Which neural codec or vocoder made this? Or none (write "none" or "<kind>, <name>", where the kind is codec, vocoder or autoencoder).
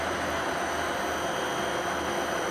none